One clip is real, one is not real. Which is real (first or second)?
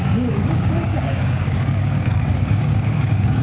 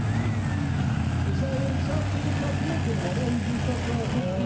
second